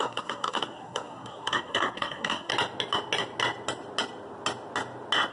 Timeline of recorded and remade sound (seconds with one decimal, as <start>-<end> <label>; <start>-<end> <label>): 0.0-2.5 remade; 2.5-5.3 recorded